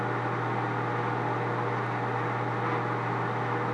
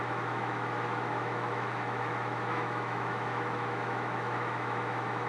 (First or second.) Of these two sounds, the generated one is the second